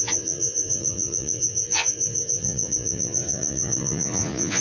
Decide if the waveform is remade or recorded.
remade